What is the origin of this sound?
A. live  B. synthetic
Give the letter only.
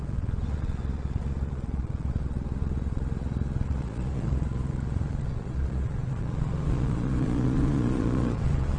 B